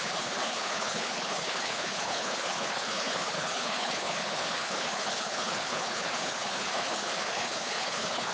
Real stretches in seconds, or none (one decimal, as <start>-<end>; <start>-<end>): none